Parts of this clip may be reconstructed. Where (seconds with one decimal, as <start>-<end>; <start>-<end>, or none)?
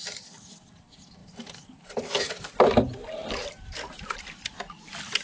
1.2-2.2; 3.2-4.6